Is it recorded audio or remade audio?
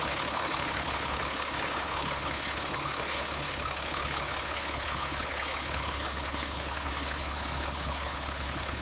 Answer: remade